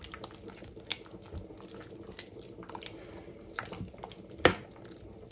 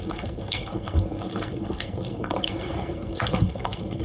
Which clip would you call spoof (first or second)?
second